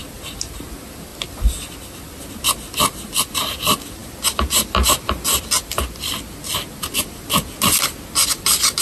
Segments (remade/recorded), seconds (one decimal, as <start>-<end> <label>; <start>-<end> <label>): 0.0-8.8 recorded